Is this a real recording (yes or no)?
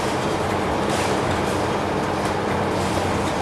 no